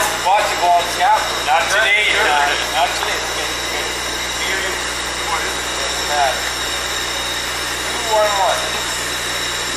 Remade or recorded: recorded